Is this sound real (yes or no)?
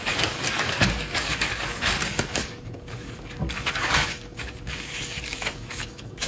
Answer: no